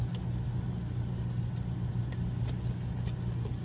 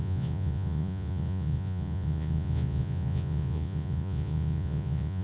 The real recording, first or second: first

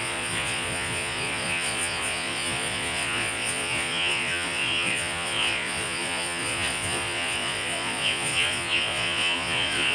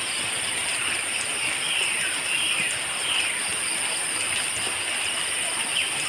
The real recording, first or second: second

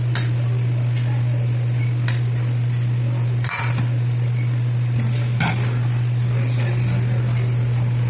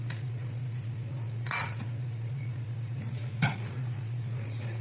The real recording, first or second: first